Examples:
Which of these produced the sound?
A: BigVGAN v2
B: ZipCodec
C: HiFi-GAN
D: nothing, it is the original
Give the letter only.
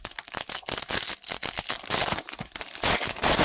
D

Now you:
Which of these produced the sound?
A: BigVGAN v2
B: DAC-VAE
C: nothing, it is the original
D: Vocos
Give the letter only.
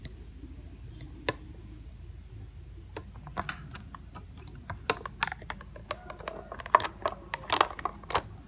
C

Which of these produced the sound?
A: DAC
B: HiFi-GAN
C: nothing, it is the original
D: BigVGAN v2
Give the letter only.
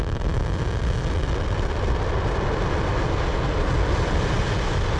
C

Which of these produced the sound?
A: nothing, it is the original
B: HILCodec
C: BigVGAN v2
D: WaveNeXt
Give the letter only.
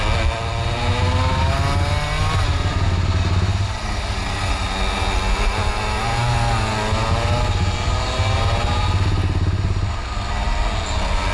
A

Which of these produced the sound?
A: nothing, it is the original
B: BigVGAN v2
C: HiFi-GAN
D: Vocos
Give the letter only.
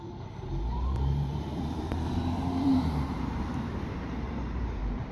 B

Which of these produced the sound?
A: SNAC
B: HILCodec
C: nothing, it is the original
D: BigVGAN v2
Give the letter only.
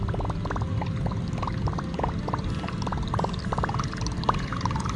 C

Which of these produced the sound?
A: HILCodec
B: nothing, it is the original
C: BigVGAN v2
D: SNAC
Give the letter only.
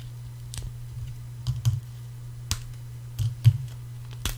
B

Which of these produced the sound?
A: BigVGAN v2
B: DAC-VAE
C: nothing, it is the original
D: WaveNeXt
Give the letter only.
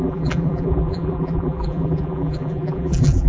A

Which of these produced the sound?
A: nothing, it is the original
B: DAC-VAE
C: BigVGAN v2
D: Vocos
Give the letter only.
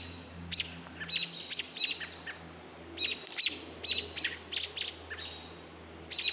A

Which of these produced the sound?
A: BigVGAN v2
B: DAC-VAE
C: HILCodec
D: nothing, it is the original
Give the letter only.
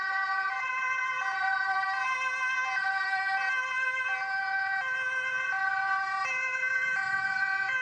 A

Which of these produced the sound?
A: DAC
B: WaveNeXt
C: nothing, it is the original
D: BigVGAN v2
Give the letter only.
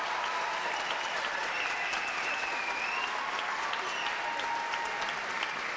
C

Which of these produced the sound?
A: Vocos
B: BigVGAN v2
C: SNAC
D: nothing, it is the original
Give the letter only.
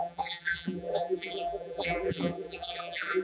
B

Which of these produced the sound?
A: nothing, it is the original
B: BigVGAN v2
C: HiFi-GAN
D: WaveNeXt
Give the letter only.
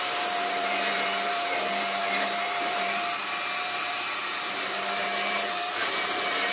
B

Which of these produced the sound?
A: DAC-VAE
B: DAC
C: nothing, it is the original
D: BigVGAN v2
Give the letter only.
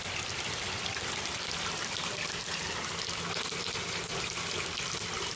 C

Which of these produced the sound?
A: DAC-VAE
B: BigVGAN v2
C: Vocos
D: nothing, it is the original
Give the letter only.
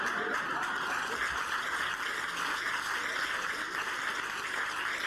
D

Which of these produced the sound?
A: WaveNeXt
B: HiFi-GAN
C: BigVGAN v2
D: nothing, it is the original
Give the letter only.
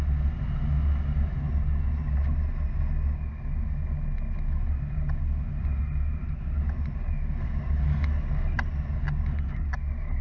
D